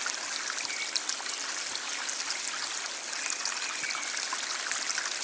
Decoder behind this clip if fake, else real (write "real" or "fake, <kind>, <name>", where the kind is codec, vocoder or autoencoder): real